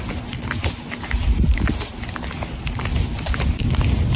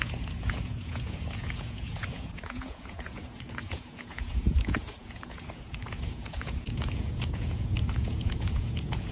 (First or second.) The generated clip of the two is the second